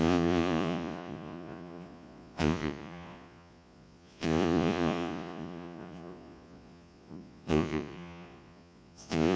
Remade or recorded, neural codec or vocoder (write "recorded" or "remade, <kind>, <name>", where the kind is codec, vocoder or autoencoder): remade, vocoder, Vocos